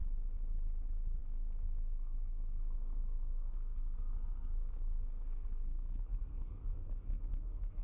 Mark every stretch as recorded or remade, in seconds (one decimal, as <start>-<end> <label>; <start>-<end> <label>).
0.0-1.2 recorded; 1.2-7.8 remade